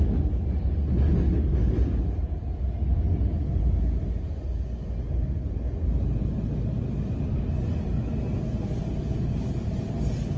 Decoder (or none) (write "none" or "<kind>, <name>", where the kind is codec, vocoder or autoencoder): none